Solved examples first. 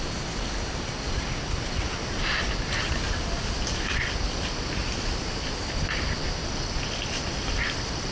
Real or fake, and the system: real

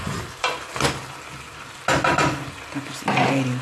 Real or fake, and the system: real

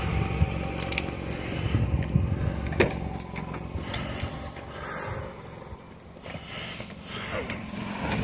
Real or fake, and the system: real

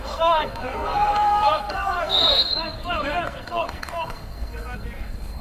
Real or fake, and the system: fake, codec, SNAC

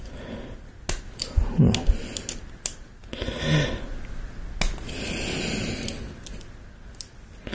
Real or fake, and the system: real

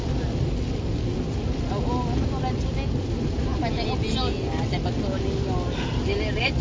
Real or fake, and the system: real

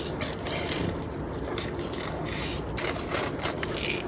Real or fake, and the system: real